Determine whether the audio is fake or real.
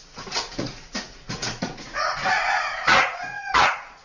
fake